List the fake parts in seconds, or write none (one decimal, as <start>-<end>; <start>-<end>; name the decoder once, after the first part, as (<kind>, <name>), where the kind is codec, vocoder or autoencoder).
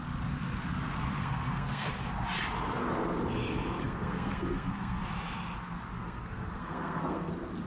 1.2-1.9 (codec, SNAC); 3.8-5.0; 6.0-7.3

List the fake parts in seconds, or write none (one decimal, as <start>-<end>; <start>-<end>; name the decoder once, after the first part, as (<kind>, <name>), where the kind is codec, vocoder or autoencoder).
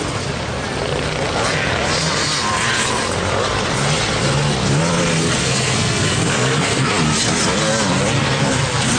5.4-6.9 (codec, SNAC)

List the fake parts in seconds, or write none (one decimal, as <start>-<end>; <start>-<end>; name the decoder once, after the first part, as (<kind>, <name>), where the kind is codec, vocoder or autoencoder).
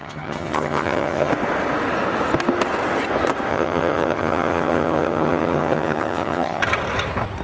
0.0-1.3 (vocoder, HiFi-GAN); 3.5-6.6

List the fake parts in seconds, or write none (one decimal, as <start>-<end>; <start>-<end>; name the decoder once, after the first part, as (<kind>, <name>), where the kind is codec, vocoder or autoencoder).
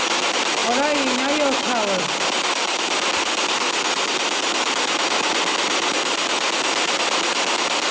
none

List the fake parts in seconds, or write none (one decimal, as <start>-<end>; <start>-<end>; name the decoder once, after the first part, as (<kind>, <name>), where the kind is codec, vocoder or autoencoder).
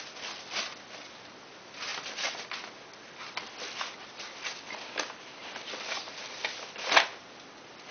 none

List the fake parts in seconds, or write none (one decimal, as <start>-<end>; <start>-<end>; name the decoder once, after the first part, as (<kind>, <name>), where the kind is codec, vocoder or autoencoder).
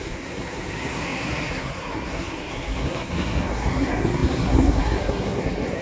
0.0-5.8 (codec, SNAC)